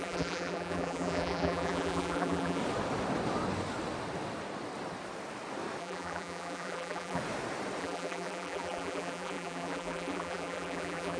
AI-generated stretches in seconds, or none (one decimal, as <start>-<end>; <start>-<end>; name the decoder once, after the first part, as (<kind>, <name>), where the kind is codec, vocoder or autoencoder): 0.0-2.6 (vocoder, BigVGAN v2); 5.8-7.2; 7.8-11.2